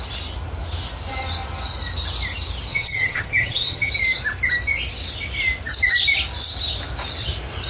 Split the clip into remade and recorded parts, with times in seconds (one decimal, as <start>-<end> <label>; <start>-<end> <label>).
0.0-2.7 recorded; 2.7-3.9 remade; 3.9-7.7 recorded